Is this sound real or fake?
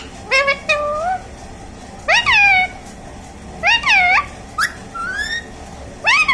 real